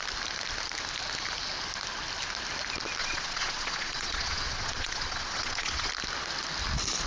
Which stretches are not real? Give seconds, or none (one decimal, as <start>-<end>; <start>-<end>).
3.0-5.9

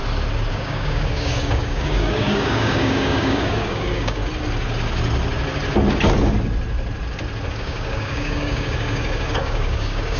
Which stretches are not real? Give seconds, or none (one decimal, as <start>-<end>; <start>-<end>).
0.5-4.2; 7.5-10.2